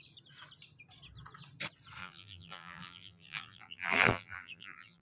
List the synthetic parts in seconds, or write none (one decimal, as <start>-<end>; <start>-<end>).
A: 2.0-5.0